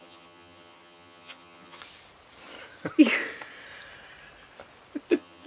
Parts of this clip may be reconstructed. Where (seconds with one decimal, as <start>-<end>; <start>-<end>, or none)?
0.0-1.8; 5.1-5.5